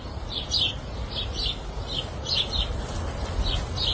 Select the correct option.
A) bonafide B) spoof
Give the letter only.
A